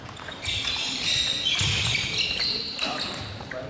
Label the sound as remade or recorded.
recorded